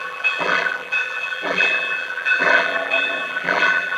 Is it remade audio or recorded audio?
remade